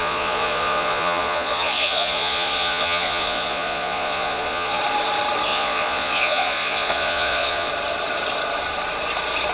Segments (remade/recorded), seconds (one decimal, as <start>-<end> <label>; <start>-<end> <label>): 0.0-4.8 remade; 4.8-5.5 recorded; 5.5-7.7 remade; 7.7-9.5 recorded